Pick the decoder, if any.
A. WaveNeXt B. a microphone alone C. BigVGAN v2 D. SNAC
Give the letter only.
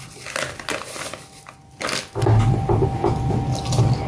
B